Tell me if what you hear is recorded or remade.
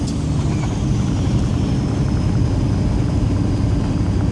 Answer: recorded